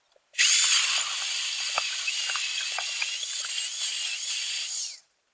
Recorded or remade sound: remade